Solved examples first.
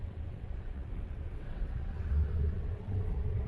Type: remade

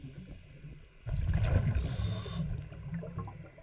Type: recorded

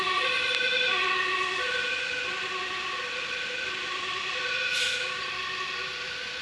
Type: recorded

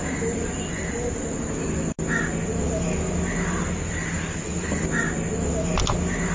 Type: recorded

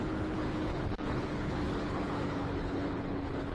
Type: remade